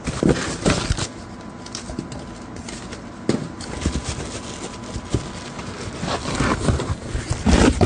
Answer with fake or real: real